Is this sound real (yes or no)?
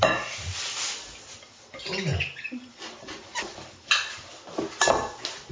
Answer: yes